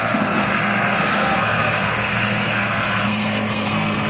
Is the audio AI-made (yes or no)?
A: yes